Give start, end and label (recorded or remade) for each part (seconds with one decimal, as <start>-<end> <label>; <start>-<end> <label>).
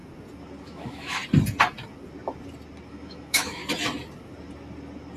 0.0-0.6 recorded; 0.6-1.2 remade; 1.2-2.9 recorded; 2.9-3.6 remade; 3.6-5.2 recorded